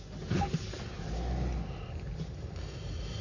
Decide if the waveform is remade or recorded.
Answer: recorded